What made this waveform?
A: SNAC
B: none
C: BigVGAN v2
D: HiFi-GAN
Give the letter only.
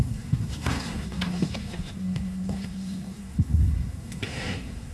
A